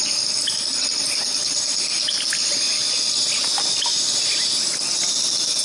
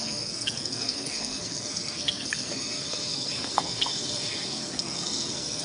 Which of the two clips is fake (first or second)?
second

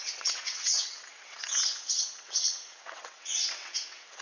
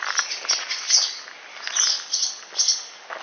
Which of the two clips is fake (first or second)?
first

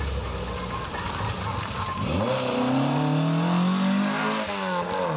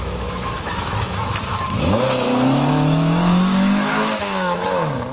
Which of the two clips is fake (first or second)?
second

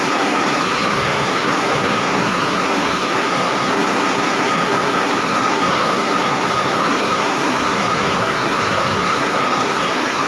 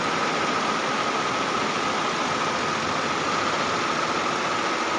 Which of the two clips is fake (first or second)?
first